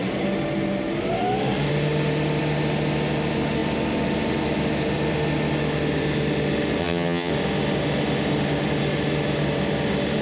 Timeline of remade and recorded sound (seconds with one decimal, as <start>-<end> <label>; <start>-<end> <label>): 0.0-6.8 recorded; 6.8-7.3 remade; 7.3-10.2 recorded